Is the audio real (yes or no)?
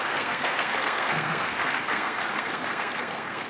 no